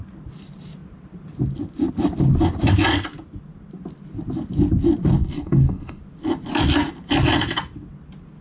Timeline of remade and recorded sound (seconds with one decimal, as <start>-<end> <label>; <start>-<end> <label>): 0.0-5.2 recorded; 5.2-6.0 remade; 6.0-8.4 recorded